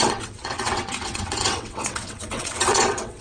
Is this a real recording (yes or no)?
no